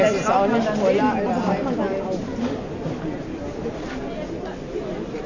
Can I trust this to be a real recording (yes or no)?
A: yes